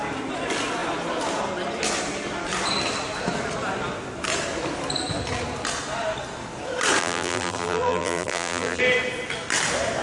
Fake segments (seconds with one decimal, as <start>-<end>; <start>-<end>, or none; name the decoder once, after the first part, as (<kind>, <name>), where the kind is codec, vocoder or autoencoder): 7.0-8.8 (vocoder, BigVGAN v2)

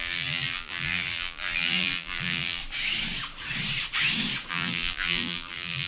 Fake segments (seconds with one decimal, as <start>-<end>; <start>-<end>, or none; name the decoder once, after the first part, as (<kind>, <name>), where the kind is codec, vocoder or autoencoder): 0.0-2.6 (vocoder, BigVGAN v2); 4.5-5.9

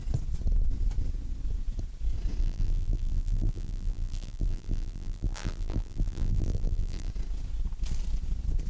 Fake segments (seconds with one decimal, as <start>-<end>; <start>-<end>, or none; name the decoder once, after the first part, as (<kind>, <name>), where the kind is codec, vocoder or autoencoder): 2.4-7.1 (vocoder, BigVGAN v2)

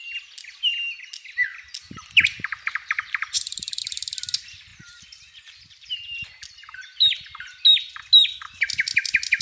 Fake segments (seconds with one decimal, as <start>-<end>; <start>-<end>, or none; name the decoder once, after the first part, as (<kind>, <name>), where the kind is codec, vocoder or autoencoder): 1.5-3.8 (vocoder, BigVGAN v2)

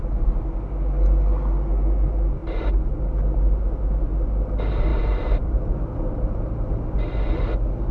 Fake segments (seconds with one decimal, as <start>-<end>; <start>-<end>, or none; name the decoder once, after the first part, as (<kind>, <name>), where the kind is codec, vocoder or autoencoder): 4.9-7.2 (vocoder, BigVGAN v2)

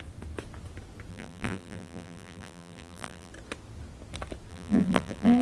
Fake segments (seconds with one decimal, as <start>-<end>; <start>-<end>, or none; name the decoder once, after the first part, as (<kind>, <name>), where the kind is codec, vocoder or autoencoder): 1.1-3.3 (vocoder, BigVGAN v2); 4.5-5.4

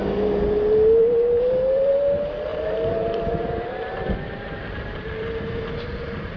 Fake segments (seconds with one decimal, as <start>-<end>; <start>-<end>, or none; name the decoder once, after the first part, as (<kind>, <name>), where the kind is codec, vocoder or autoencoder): 1.0-1.9 (vocoder, BigVGAN v2); 2.5-6.4